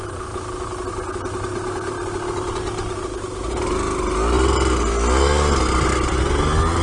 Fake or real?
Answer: real